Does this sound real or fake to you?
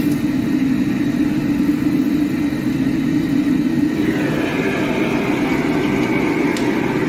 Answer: real